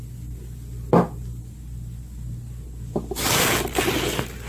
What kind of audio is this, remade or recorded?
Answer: recorded